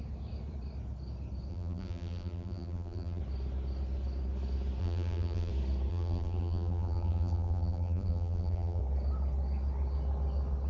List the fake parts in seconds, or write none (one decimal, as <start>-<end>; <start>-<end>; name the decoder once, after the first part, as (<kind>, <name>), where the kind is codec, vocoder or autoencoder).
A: 1.5-3.2 (vocoder, BigVGAN v2); 4.8-5.5; 5.9-8.8